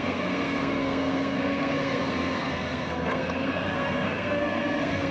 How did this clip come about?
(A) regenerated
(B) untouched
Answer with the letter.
A